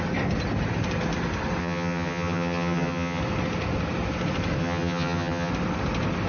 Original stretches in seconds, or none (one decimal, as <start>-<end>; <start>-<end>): 0.0-1.6; 3.2-4.6; 5.5-6.3